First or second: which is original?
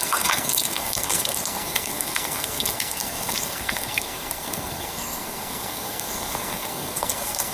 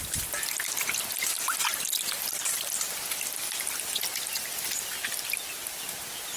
second